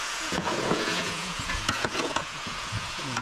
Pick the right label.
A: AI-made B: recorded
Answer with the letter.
A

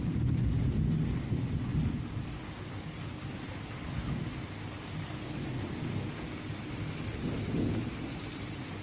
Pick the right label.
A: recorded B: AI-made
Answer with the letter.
A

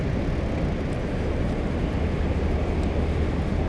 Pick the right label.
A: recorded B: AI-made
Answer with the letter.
A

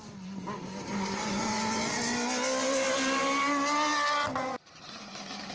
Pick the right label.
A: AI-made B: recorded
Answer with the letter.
B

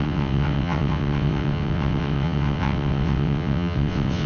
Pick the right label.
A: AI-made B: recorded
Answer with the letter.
A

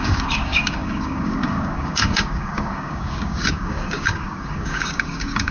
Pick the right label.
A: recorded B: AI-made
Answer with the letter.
B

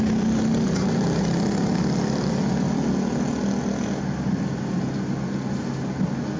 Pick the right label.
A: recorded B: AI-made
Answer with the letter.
A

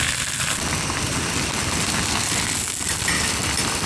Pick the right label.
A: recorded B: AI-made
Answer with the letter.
A